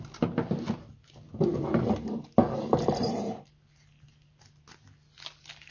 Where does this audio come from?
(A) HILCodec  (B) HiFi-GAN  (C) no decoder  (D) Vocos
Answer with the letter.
C